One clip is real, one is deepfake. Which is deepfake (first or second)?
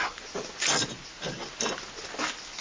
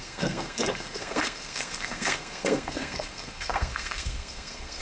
second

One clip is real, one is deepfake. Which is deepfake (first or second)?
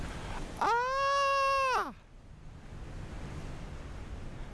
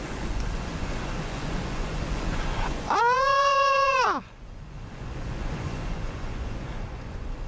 second